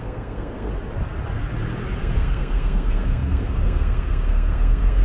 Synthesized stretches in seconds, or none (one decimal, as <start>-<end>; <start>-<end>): 0.0-0.7; 2.0-5.0